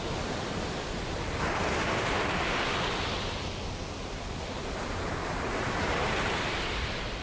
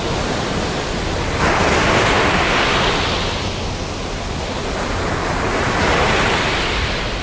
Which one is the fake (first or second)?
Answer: first